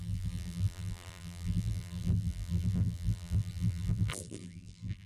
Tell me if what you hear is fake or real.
fake